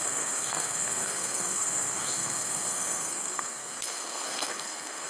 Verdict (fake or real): fake